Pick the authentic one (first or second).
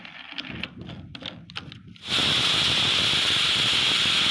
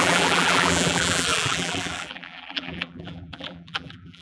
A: first